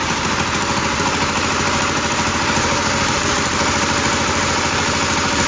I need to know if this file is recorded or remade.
remade